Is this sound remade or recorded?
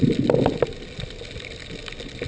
recorded